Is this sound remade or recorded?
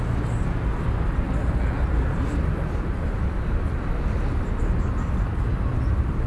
recorded